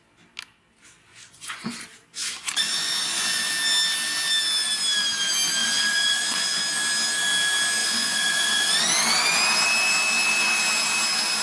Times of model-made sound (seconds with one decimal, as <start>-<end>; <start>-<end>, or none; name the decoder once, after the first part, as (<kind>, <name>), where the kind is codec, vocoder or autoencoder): 1.1-1.7 (vocoder, Vocos); 2.2-3.5; 5.6-6.6; 7.8-8.7